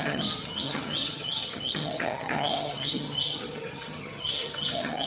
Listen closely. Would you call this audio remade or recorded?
remade